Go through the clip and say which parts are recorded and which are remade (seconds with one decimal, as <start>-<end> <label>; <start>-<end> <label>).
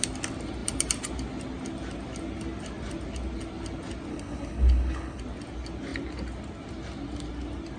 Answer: 0.0-4.1 recorded; 4.1-5.2 remade; 5.2-7.8 recorded